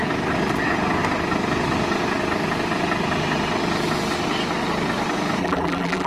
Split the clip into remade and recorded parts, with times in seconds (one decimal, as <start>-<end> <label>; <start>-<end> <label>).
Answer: 0.0-5.4 recorded; 5.4-6.1 remade